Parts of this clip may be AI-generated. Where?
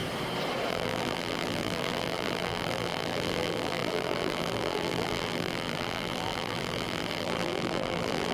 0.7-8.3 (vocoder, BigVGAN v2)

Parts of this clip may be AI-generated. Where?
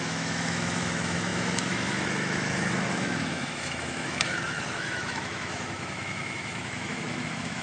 0.0-7.6 (autoencoder, DAC-VAE)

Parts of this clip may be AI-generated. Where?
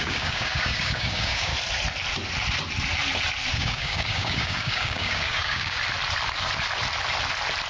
0.0-1.5 (codec, DAC); 3.5-5.8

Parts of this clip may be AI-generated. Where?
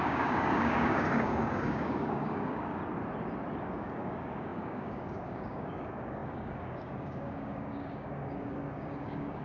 0.0-2.8 (codec, DAC); 3.6-9.4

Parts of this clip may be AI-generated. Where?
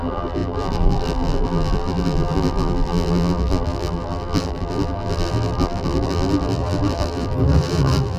0.0-8.2 (vocoder, BigVGAN v2)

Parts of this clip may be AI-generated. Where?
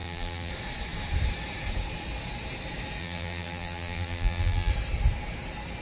0.0-0.5 (vocoder, BigVGAN v2); 3.0-4.7